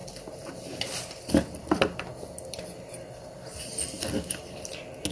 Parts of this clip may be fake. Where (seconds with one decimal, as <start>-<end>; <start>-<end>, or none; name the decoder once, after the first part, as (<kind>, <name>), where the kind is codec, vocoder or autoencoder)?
none